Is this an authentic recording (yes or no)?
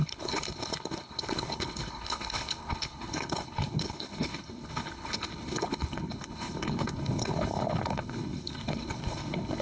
no